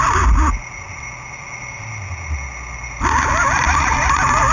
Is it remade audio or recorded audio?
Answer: recorded